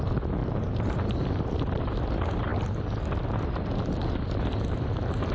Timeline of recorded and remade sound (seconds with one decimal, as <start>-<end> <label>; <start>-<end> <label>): 0.0-0.4 recorded; 0.4-1.8 remade; 1.8-5.3 recorded